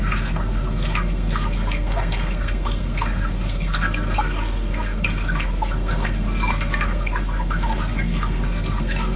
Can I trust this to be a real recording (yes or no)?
no